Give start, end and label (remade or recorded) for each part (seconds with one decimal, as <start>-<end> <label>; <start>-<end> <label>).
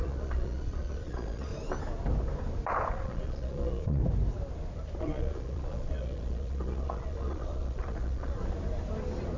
0.0-1.5 remade; 1.5-2.9 recorded; 2.9-4.0 remade; 4.0-5.0 recorded; 5.0-8.4 remade; 8.4-9.4 recorded